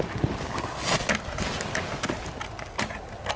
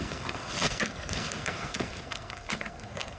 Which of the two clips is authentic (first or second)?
first